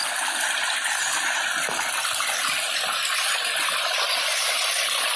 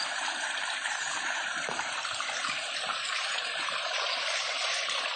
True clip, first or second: first